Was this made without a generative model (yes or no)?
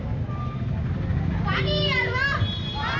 yes